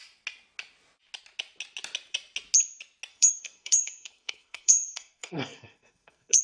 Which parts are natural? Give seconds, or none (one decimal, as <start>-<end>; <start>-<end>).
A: 0.0-3.1